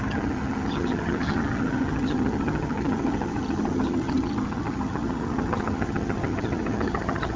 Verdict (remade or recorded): remade